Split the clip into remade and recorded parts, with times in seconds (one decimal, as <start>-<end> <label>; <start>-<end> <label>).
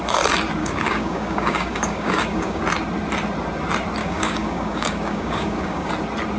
0.0-0.6 recorded; 0.6-2.6 remade; 2.6-4.0 recorded; 4.0-5.9 remade; 5.9-6.4 recorded